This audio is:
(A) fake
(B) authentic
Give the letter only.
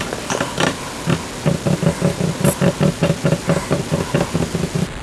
B